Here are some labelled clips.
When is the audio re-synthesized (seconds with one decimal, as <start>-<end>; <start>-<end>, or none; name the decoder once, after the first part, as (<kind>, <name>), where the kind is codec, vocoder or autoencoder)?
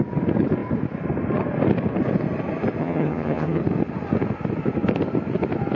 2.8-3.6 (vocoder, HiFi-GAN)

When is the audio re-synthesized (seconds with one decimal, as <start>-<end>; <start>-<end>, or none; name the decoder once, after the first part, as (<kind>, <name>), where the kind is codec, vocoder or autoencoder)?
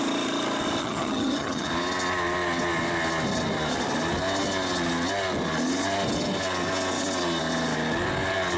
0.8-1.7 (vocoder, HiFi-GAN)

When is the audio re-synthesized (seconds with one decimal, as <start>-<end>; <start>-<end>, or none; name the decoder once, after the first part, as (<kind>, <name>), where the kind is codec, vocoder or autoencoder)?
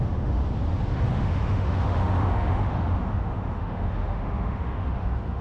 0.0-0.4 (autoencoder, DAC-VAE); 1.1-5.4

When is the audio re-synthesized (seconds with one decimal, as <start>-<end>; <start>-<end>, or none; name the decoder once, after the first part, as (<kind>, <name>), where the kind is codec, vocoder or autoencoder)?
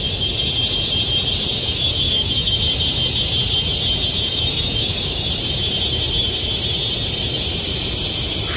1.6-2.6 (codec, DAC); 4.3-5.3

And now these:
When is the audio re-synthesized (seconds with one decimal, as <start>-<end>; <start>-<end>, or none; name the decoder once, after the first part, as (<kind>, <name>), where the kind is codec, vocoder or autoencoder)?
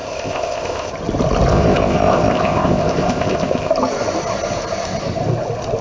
0.0-0.9 (codec, ZipCodec); 1.5-3.7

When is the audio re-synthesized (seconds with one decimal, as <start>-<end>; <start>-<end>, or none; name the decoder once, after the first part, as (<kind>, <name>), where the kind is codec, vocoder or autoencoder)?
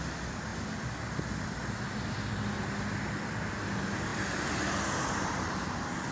4.1-4.6 (vocoder, BigVGAN v2)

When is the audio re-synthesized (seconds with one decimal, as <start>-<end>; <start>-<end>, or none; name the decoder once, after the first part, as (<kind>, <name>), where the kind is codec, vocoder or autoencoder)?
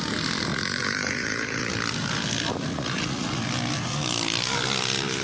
0.5-1.7 (vocoder, Vocos); 2.7-3.4